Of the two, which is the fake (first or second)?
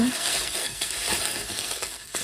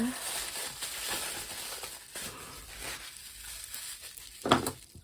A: first